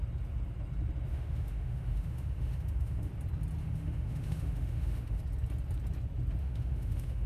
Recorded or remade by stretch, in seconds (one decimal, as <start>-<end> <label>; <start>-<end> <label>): 0.0-1.1 recorded; 1.1-3.1 remade; 3.1-3.6 recorded; 3.6-5.2 remade; 5.2-6.4 recorded; 6.4-7.3 remade